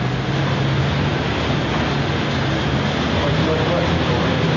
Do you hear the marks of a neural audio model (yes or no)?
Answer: no